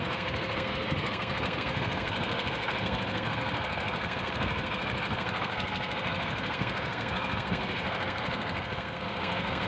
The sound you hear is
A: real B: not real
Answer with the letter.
B